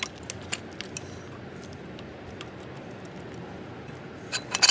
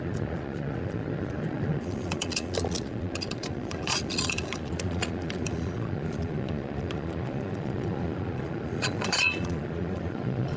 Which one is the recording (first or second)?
first